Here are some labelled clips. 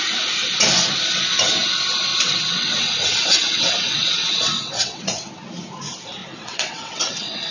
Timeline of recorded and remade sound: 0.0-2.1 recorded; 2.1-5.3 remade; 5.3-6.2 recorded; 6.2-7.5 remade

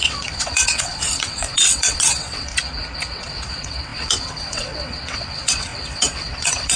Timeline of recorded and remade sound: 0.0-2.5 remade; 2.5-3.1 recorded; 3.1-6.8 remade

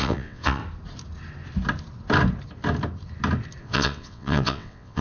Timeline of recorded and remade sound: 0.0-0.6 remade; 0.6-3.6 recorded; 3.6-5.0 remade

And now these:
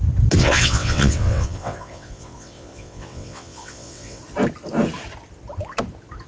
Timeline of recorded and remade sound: 0.0-0.4 recorded; 0.4-4.2 remade; 4.2-6.3 recorded

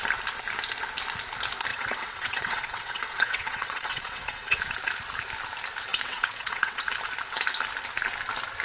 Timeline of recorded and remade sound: 0.0-1.7 recorded; 1.7-4.6 remade; 4.6-5.9 recorded; 5.9-6.8 remade; 6.8-8.6 recorded